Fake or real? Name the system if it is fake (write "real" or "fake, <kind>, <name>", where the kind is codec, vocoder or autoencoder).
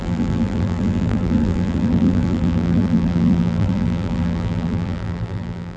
fake, vocoder, BigVGAN v2